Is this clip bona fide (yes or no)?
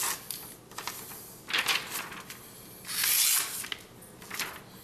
yes